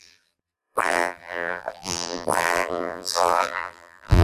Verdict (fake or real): fake